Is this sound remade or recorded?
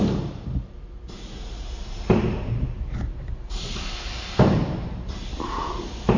remade